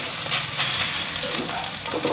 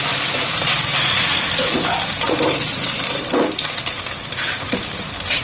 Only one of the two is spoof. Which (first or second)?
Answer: second